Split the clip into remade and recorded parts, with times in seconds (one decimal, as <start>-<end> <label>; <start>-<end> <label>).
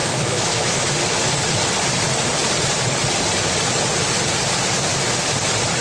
0.0-0.9 remade; 0.9-5.8 recorded